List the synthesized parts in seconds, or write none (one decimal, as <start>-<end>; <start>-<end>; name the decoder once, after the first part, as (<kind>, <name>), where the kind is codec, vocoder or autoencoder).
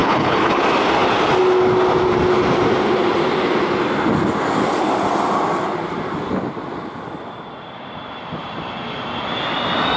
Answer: 0.0-0.6 (codec, HILCodec)